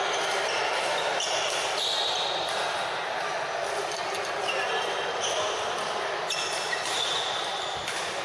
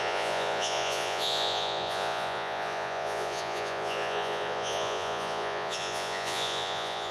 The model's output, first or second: second